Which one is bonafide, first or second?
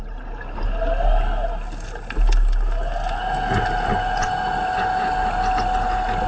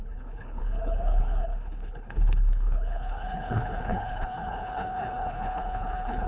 first